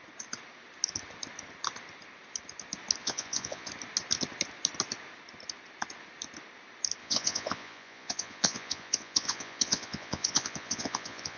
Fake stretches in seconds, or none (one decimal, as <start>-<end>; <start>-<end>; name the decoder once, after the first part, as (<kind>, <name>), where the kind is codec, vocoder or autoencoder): 3.0-3.7 (vocoder, Vocos); 7.0-11.4